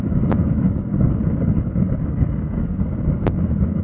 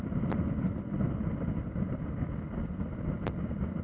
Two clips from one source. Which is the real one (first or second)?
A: second